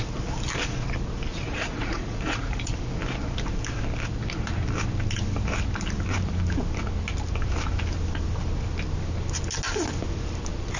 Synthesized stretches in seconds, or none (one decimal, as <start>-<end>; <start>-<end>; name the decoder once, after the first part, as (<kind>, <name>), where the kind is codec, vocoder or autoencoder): 1.3-2.6 (vocoder, Vocos)